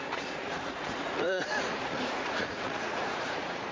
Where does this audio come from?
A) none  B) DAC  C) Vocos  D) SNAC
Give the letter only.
C